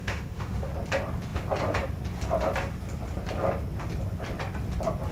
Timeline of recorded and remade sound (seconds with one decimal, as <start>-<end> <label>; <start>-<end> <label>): 0.0-0.7 remade; 0.7-5.1 recorded